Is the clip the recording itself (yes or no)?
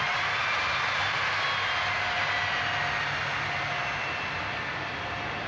yes